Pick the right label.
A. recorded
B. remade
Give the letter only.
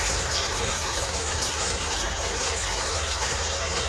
B